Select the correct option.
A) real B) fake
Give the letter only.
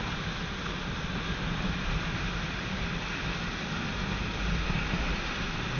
A